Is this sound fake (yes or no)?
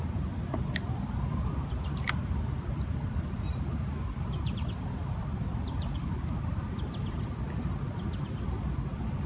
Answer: yes